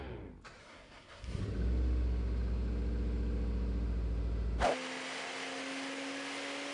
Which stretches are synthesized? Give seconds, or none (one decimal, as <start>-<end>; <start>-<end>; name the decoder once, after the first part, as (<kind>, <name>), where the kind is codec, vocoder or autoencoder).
0.6-1.4 (codec, SNAC)